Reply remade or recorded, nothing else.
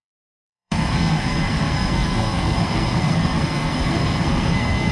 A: remade